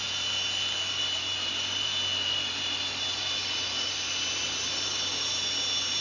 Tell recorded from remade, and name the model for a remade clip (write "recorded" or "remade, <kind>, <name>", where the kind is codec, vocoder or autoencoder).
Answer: recorded